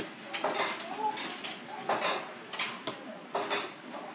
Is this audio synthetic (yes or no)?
no